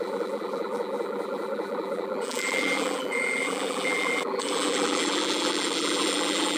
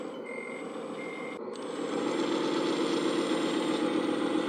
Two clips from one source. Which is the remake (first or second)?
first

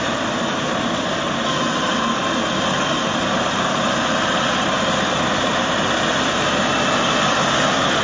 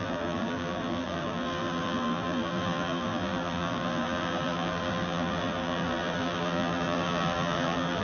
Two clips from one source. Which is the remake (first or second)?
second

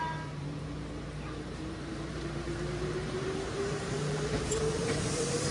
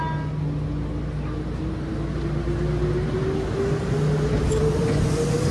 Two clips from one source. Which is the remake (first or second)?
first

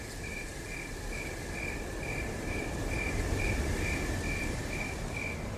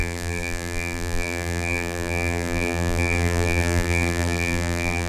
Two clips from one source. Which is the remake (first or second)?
second